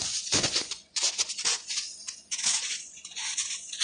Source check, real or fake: fake